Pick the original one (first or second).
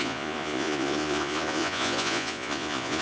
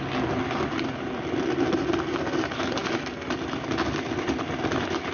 second